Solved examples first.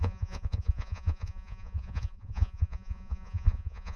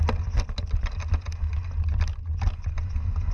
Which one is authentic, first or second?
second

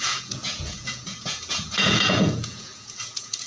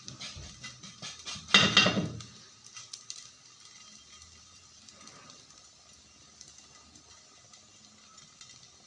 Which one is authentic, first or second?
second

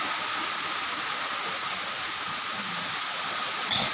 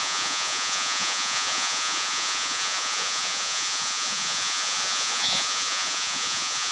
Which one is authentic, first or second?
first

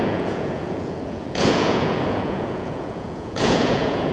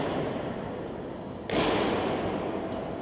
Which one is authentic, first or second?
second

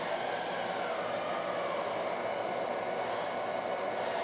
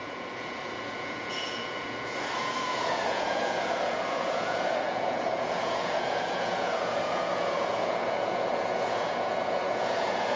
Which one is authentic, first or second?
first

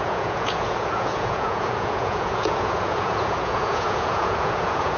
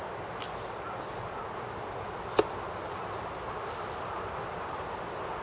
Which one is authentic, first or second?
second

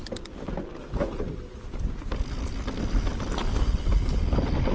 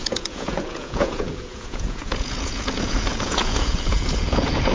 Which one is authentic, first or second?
first